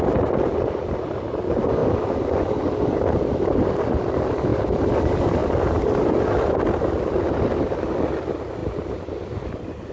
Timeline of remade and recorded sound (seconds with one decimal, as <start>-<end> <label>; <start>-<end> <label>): 0.0-4.5 recorded; 4.5-5.0 remade; 5.0-5.4 recorded; 5.4-6.8 remade; 6.8-8.6 recorded; 8.6-9.9 remade